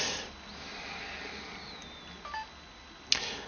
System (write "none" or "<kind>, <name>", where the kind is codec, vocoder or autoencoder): none